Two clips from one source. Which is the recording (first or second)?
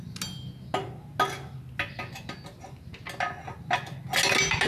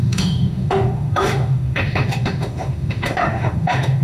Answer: first